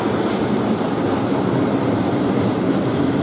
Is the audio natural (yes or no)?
yes